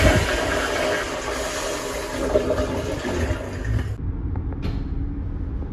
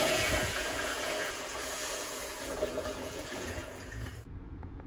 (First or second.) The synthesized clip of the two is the second